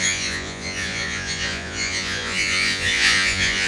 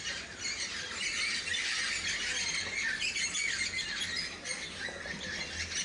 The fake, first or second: first